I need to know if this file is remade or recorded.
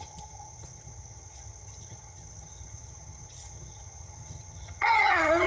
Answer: remade